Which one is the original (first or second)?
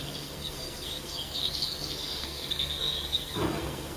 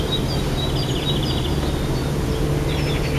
second